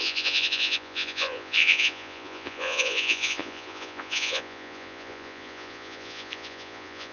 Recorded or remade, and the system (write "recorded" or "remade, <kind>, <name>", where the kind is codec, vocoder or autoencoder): remade, vocoder, Vocos